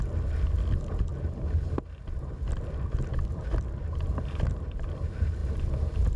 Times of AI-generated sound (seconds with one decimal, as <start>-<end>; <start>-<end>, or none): none